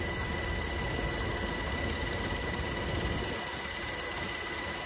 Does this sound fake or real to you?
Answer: real